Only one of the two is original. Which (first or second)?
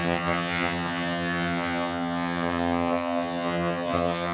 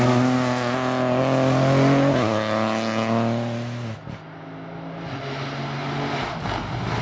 second